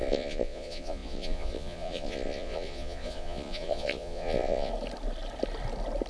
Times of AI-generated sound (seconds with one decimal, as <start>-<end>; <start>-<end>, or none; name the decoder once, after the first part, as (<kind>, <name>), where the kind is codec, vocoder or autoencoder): 0.0-4.7 (vocoder, Vocos)